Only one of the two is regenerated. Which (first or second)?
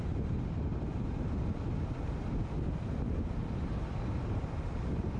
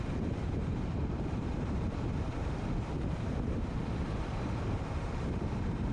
second